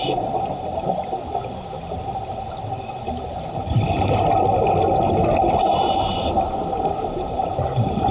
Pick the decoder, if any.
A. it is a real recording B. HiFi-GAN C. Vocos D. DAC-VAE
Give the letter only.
A